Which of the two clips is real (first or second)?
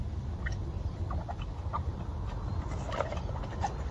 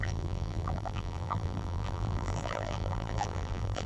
first